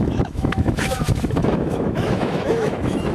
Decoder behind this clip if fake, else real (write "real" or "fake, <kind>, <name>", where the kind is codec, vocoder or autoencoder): fake, autoencoder, DAC-VAE